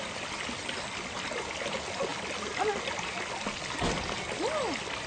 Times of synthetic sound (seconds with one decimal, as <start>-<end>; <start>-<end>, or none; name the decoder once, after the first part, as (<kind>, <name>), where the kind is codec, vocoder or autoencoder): none